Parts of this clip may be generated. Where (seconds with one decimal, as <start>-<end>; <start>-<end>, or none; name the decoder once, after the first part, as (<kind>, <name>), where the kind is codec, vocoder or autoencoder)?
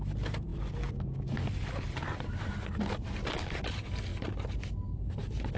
none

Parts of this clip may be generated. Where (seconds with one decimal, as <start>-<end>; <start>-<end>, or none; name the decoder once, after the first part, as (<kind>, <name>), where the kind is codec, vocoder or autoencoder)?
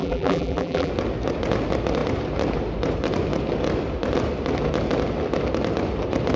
0.0-0.9 (vocoder, BigVGAN v2)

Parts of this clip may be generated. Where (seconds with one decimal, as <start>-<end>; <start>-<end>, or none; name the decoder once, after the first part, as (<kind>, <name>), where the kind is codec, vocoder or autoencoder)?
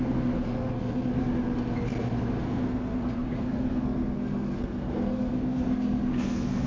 0.0-1.2 (codec, SNAC); 2.4-6.7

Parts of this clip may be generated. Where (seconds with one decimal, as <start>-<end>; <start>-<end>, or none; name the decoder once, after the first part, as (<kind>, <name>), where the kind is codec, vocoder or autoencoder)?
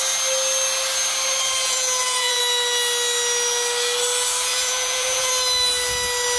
1.6-2.4 (vocoder, Vocos); 4.5-5.3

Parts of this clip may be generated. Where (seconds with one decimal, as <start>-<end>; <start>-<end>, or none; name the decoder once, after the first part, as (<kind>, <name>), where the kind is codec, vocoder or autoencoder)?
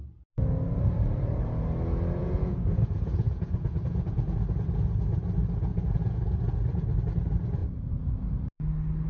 2.2-4.4 (vocoder, Vocos); 5.7-6.4